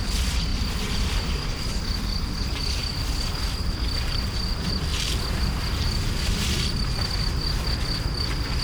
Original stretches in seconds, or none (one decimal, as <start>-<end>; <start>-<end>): 0.0-0.5; 1.8-8.6